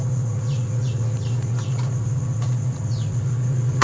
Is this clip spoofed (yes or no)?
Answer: yes